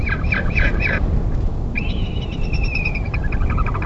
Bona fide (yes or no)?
no